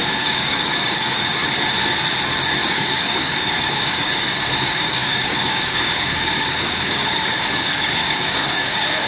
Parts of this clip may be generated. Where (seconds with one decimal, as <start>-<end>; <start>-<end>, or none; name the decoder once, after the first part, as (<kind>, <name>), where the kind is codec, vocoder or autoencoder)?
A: 0.0-1.4 (codec, DAC); 2.7-9.1